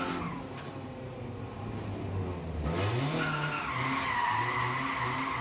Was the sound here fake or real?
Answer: real